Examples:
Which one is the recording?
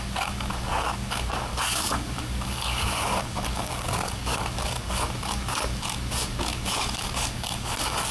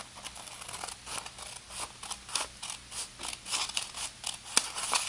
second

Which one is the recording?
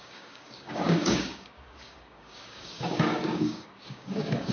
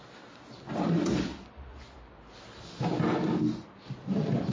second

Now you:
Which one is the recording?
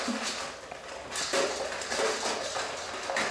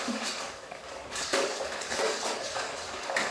first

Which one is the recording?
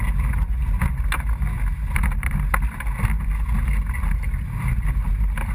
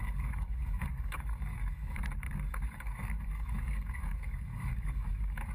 first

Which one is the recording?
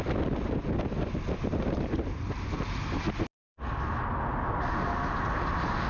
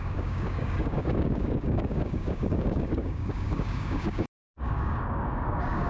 first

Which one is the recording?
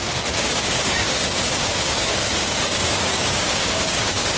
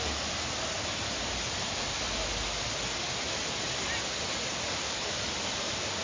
second